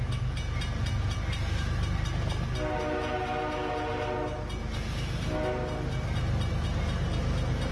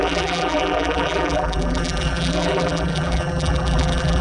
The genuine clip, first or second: first